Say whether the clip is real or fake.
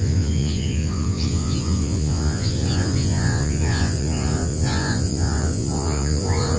fake